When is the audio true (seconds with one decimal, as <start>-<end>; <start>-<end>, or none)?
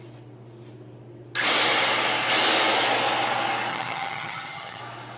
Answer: 0.0-3.7; 4.8-5.2